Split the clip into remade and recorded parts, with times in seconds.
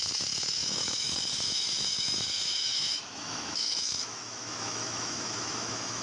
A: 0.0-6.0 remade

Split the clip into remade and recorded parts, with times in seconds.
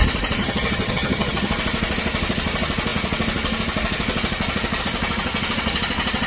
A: 0.0-0.4 recorded; 0.4-1.5 remade; 1.5-6.3 recorded